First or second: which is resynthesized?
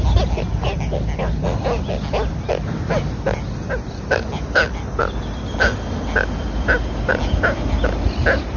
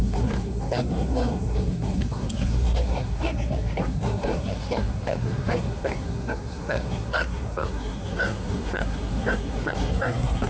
second